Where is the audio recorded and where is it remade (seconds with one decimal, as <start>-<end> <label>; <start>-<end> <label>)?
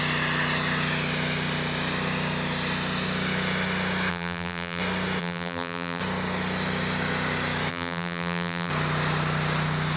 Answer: 0.0-4.1 recorded; 4.1-4.8 remade; 4.8-5.2 recorded; 5.2-6.0 remade; 6.0-7.7 recorded; 7.7-8.7 remade; 8.7-10.0 recorded